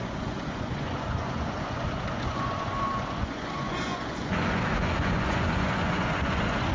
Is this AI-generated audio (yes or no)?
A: yes